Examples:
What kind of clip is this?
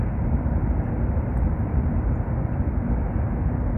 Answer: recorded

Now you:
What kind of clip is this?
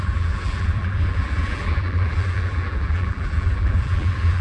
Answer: remade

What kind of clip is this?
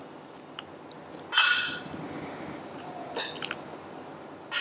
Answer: recorded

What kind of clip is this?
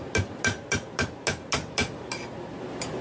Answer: recorded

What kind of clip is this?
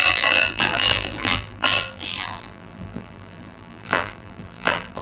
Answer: remade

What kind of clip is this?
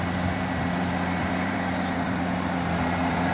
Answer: remade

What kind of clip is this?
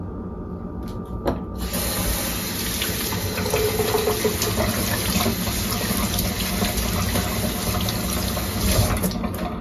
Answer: recorded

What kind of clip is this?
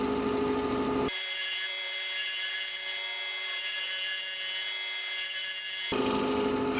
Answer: recorded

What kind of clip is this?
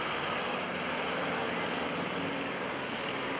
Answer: recorded